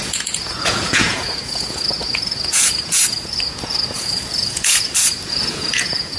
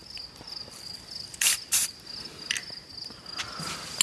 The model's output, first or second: first